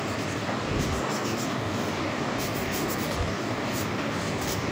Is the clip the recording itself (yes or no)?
no